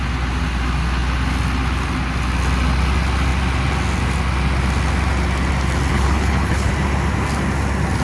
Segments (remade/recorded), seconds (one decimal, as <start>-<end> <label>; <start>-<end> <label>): 0.0-5.9 recorded; 5.9-6.7 remade; 6.7-8.0 recorded